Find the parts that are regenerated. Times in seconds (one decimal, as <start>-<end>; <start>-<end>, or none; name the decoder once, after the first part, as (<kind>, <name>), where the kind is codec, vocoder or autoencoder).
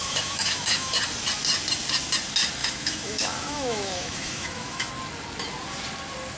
0.0-1.0 (autoencoder, DAC-VAE); 2.6-4.9